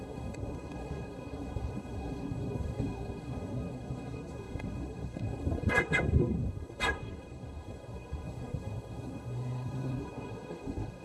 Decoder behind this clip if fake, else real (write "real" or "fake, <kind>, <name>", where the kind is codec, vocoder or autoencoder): fake, codec, SNAC